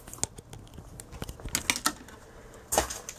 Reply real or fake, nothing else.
real